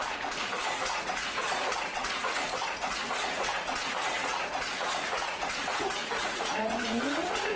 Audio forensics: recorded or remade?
remade